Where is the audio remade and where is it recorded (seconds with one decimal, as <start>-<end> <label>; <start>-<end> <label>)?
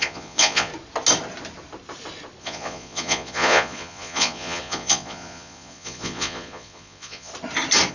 0.0-0.7 remade; 0.7-2.4 recorded; 2.4-7.3 remade; 7.3-7.9 recorded